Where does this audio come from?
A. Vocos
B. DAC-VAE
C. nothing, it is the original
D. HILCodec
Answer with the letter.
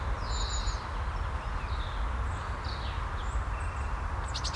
C